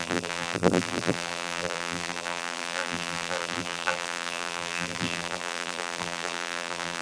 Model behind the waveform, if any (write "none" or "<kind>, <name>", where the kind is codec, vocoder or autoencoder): vocoder, BigVGAN v2